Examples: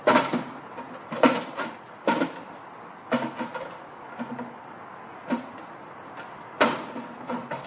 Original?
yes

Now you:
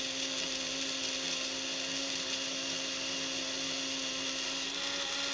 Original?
yes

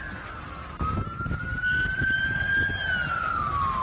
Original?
yes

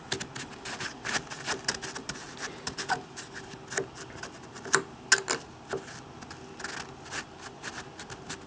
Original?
yes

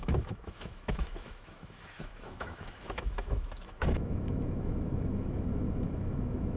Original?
no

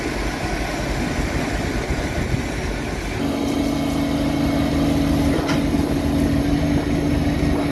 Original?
yes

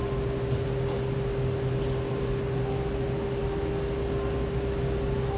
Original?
yes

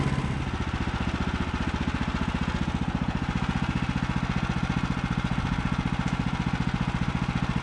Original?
yes